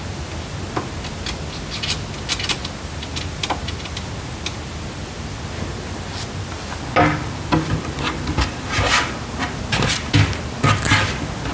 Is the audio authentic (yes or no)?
yes